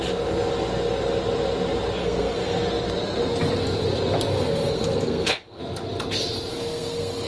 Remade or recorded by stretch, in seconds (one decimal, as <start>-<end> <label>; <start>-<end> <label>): 0.0-2.0 recorded; 2.0-2.6 remade; 2.6-4.3 recorded; 4.3-5.6 remade; 5.6-6.5 recorded; 6.5-7.3 remade